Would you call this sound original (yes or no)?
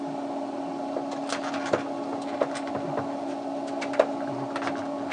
yes